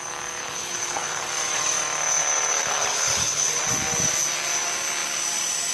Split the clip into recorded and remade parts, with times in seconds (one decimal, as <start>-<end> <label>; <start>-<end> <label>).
0.0-0.4 recorded; 0.4-1.3 remade; 1.3-2.6 recorded; 2.6-3.6 remade; 3.6-5.7 recorded